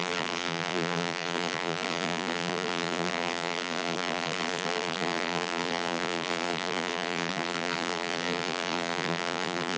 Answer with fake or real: fake